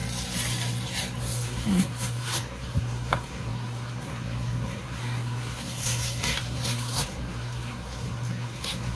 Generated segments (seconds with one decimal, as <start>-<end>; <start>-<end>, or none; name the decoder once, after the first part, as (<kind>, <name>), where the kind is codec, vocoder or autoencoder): 1.2-9.0 (codec, SNAC)